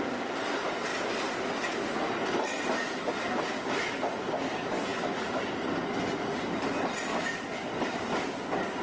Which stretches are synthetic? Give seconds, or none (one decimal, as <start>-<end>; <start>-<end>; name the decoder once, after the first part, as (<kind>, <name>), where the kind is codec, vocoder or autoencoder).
none